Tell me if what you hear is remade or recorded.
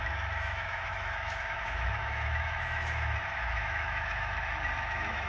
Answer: remade